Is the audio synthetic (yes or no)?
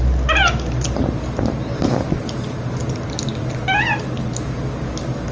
no